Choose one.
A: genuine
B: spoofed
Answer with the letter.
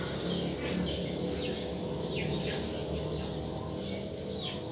A